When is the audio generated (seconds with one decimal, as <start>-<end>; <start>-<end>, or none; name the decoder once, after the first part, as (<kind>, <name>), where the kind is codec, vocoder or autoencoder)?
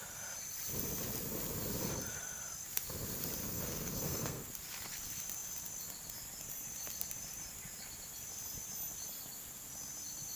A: 3.4-4.5 (codec, SNAC)